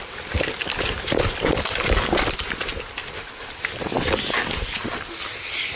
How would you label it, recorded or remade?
recorded